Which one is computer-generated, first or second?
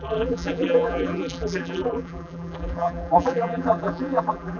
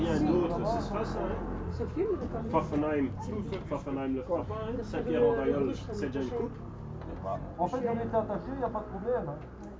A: first